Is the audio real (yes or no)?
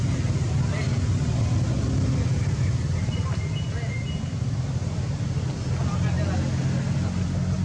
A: yes